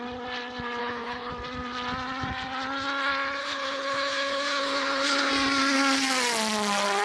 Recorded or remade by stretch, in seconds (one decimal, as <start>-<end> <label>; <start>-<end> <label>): 0.0-0.8 recorded; 0.8-1.3 remade; 1.3-3.4 recorded; 3.4-5.3 remade; 5.3-7.0 recorded